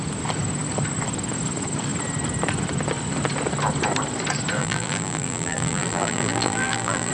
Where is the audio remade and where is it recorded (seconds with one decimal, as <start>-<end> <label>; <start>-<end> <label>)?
0.0-4.6 recorded; 4.6-7.1 remade